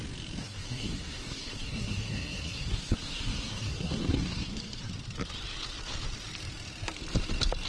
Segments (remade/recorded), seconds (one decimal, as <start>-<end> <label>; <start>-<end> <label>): 0.0-0.4 recorded; 0.4-4.9 remade; 4.9-7.7 recorded